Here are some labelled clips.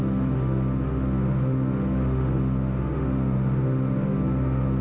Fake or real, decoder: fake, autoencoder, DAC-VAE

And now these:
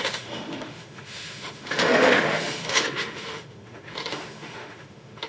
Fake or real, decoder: fake, autoencoder, DAC-VAE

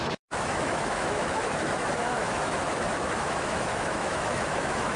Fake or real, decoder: fake, autoencoder, DAC-VAE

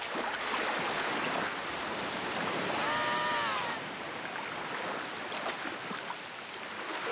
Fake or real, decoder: real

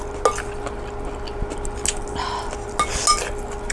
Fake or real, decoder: real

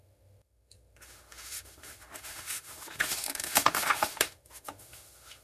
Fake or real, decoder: fake, autoencoder, DAC-VAE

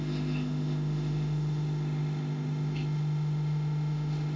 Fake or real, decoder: fake, autoencoder, DAC-VAE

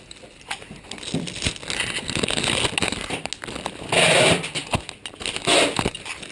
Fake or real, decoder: real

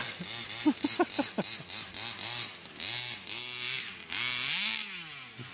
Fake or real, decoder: real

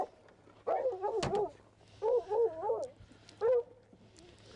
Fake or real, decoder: real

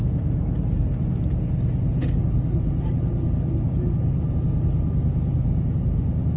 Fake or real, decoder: real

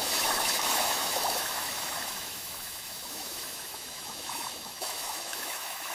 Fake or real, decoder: fake, autoencoder, DAC-VAE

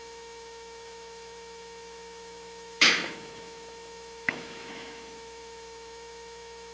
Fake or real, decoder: fake, autoencoder, DAC-VAE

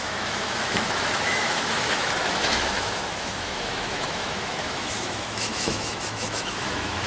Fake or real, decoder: fake, autoencoder, DAC-VAE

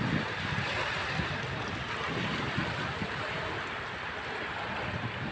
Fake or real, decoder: real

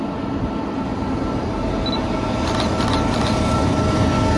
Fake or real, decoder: real